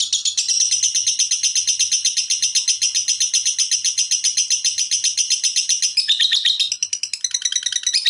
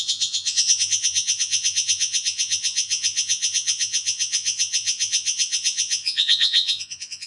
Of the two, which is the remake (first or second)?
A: second